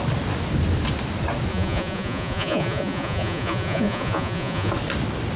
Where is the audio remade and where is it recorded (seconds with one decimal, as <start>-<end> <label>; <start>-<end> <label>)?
0.0-1.5 recorded; 1.5-4.7 remade; 4.7-5.4 recorded